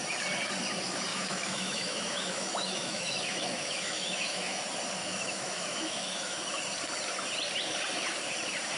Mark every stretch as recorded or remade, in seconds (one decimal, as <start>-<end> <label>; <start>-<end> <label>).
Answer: 0.0-1.1 recorded; 1.1-4.6 remade; 4.6-5.0 recorded; 5.0-6.6 remade; 6.6-8.8 recorded